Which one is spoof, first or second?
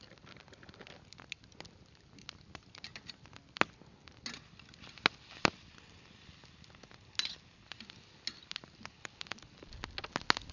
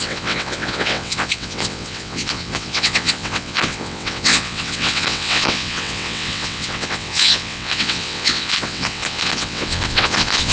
second